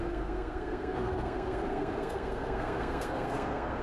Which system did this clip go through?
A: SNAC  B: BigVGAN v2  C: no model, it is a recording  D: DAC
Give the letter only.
A